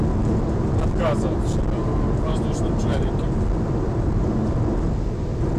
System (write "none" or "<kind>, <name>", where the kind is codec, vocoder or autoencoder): none